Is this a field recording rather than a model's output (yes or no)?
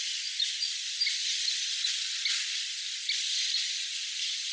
yes